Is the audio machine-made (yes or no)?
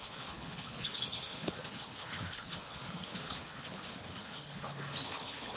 yes